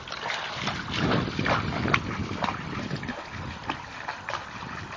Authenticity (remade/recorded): remade